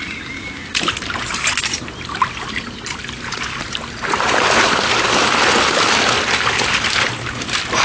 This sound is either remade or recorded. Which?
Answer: recorded